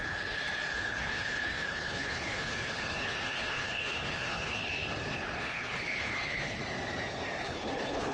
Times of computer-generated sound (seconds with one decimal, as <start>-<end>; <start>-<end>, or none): 0.7-4.6; 5.4-6.6; 7.4-8.1